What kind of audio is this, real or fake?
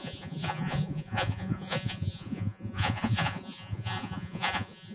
fake